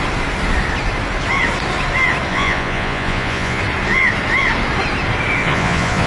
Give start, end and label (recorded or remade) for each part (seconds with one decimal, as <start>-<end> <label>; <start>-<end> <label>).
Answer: 0.0-2.3 recorded; 2.3-3.6 remade; 3.6-5.4 recorded; 5.4-6.1 remade